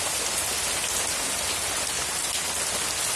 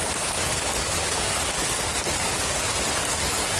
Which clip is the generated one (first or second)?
second